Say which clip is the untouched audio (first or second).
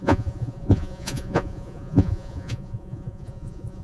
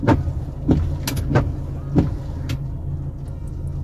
second